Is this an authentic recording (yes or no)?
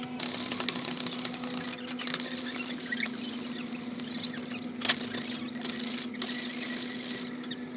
yes